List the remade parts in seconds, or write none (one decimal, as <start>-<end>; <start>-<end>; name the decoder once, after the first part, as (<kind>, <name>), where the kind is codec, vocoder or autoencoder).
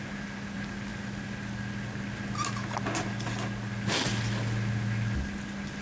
none